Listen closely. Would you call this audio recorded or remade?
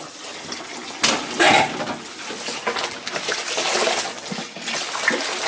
recorded